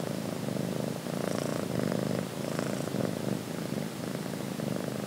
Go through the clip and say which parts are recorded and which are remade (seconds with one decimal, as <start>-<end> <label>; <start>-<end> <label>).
0.0-5.1 recorded